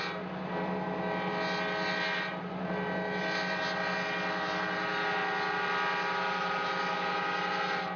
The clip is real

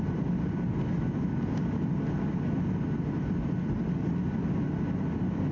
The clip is real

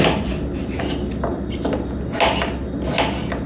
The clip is real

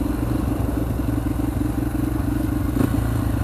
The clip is real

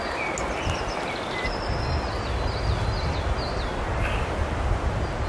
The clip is real